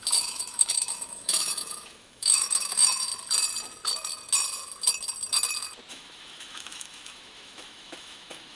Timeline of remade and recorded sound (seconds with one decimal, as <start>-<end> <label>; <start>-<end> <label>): 0.0-3.1 remade; 3.1-5.9 recorded; 5.9-8.6 remade